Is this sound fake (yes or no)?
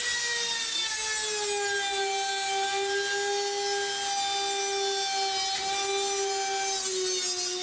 no